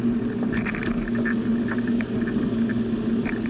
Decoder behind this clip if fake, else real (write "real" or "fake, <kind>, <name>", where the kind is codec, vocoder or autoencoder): real